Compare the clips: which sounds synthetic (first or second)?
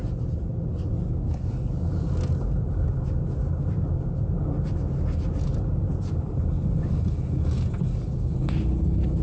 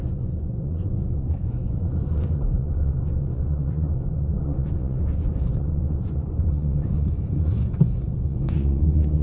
second